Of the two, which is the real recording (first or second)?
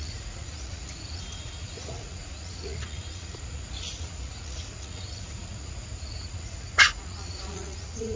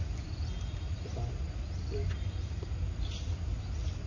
second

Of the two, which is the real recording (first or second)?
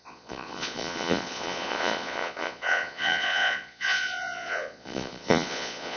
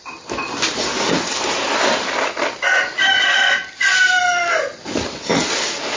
second